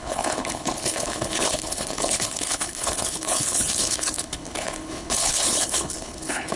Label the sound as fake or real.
fake